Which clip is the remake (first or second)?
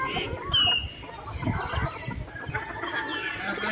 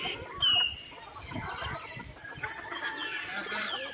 second